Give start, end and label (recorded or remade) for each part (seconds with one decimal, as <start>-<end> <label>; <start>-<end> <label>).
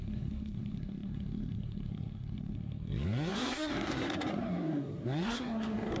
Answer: 0.0-6.0 remade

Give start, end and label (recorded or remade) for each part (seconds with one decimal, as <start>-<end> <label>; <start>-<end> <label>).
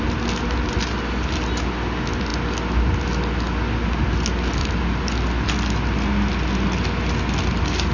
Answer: 0.0-7.9 recorded